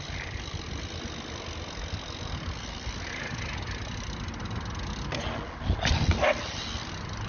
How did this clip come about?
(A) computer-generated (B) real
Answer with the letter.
B